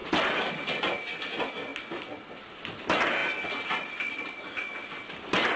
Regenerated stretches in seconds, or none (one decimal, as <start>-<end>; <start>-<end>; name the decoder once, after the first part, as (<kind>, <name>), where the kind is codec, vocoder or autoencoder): none